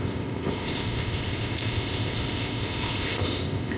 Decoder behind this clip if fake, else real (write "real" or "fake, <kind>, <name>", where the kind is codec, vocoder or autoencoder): fake, codec, ZipCodec